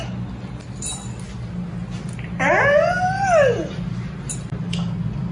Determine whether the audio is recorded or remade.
recorded